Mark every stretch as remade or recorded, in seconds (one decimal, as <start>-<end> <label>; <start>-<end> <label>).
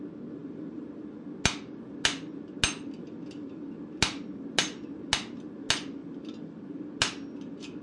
0.0-7.8 recorded